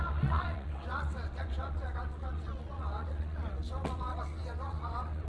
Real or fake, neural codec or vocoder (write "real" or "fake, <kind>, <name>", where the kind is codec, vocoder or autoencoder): fake, vocoder, WaveNeXt